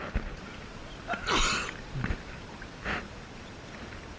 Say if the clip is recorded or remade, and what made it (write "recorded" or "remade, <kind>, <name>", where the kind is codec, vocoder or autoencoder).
recorded